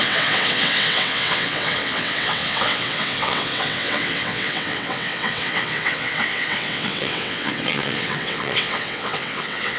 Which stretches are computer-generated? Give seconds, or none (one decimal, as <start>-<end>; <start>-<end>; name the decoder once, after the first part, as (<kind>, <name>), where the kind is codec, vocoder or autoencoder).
0.0-9.8 (vocoder, WaveNeXt)